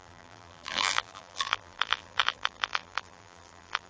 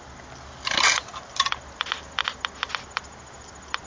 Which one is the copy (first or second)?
first